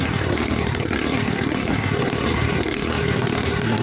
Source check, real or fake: fake